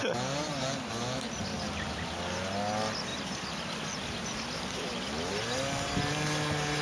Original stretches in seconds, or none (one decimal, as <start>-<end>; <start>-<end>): 0.0-6.8